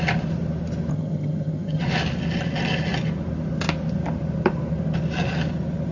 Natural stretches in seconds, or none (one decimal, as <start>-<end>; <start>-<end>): 0.0-0.9; 1.8-5.9